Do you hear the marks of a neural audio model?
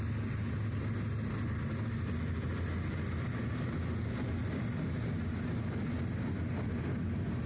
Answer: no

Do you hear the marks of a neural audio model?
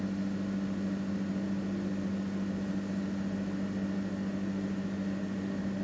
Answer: yes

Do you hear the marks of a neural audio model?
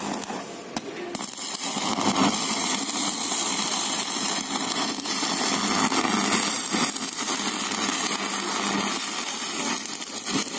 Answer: no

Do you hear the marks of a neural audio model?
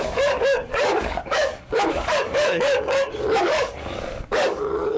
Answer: yes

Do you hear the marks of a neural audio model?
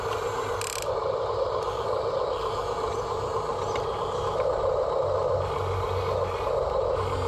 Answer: no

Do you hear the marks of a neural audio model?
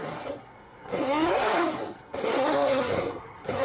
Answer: yes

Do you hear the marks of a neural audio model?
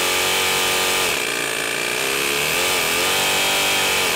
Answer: no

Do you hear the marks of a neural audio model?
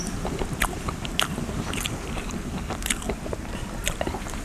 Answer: yes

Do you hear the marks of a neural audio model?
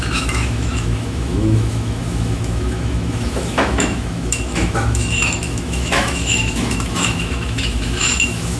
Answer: yes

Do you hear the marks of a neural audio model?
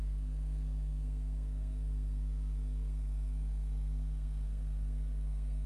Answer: yes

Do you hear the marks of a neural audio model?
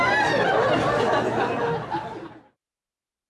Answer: no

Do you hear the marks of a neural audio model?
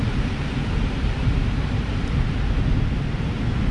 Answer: yes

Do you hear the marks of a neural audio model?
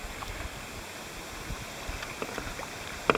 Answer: no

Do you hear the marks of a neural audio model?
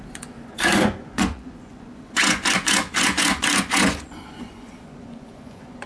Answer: yes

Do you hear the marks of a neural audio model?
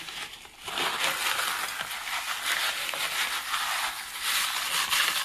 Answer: no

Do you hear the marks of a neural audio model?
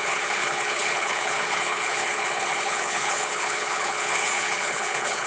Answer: yes